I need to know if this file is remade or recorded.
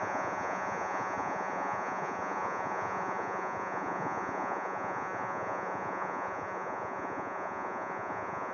remade